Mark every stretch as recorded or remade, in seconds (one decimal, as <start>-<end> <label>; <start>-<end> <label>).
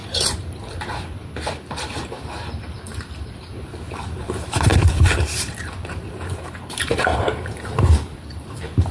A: 0.0-8.9 remade